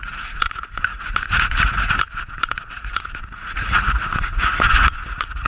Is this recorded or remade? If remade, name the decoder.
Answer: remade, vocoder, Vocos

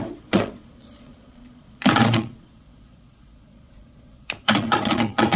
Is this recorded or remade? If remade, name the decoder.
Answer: remade, vocoder, Vocos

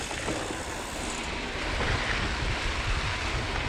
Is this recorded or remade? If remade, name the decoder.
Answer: recorded